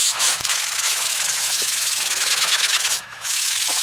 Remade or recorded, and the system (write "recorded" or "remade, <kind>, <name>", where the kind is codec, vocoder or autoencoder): remade, autoencoder, DAC-VAE